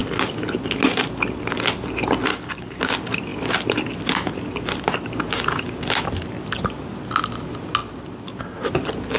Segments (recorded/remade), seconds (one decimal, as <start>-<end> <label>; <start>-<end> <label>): 0.0-2.3 recorded; 2.3-2.8 remade; 2.8-9.2 recorded